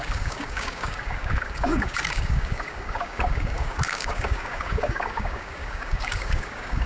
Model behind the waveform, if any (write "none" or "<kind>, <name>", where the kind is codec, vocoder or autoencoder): codec, DAC